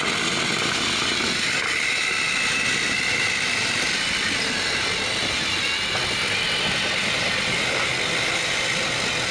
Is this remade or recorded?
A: recorded